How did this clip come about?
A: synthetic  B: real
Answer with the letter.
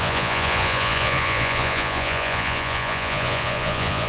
A